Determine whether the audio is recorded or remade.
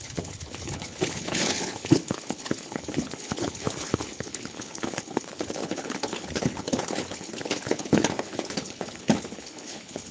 remade